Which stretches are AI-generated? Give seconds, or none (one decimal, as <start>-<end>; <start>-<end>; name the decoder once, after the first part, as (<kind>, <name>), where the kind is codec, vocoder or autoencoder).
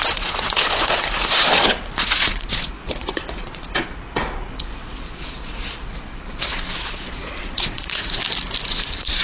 0.0-8.2 (vocoder, Vocos); 8.7-9.2